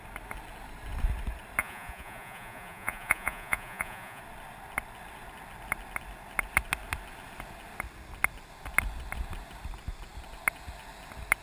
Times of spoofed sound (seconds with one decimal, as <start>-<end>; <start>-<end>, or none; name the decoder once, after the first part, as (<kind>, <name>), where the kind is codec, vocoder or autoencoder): 1.6-4.2 (vocoder, Vocos)